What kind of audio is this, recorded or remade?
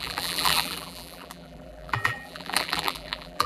remade